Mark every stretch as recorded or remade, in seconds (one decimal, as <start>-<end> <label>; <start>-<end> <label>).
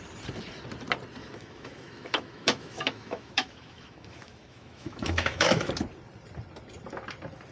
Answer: 0.0-1.2 recorded; 1.2-5.7 remade; 5.7-7.5 recorded